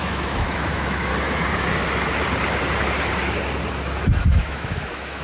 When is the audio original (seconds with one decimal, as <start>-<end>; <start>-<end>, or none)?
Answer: 1.1-4.1